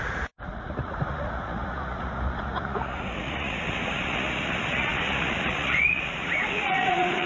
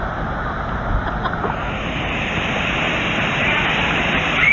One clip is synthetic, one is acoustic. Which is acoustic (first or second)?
second